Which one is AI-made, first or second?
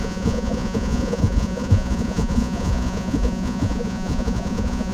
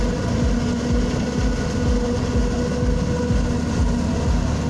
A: first